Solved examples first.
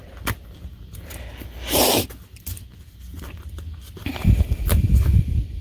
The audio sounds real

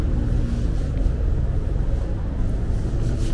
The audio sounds real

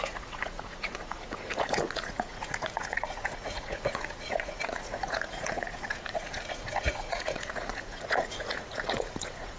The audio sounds fake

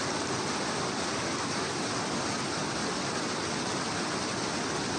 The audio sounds real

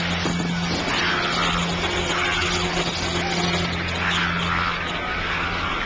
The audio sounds real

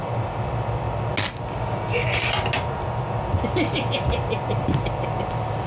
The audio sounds real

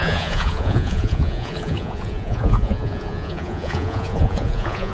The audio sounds fake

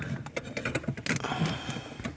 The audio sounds real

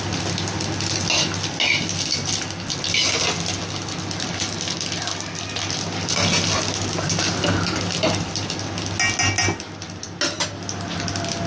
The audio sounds real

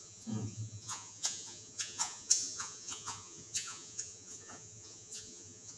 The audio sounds fake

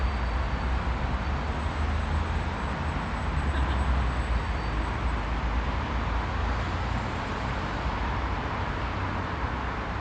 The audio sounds real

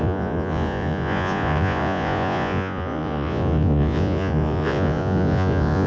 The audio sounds fake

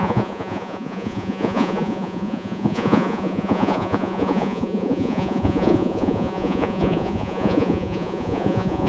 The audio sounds fake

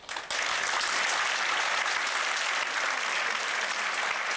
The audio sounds real